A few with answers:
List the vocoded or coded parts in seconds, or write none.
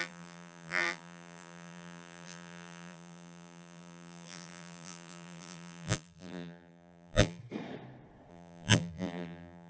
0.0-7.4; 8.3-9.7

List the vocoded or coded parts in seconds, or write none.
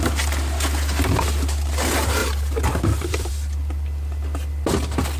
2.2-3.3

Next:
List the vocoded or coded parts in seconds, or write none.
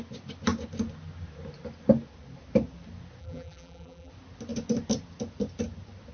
3.2-4.1